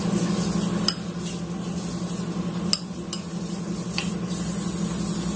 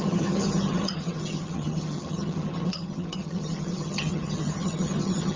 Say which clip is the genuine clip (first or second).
first